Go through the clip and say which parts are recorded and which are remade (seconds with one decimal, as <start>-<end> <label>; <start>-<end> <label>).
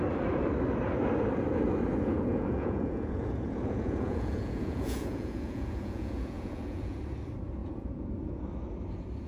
0.0-1.9 recorded; 1.9-7.0 remade; 7.0-7.6 recorded; 7.6-8.4 remade; 8.4-9.3 recorded